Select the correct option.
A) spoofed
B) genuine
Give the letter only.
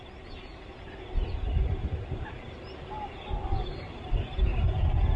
B